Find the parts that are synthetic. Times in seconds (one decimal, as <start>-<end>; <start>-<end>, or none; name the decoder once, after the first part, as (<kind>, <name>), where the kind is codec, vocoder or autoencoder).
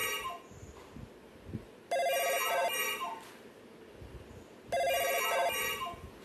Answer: none